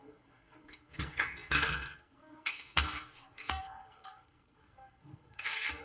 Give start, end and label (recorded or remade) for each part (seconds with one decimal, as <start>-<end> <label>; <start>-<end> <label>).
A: 0.0-5.8 remade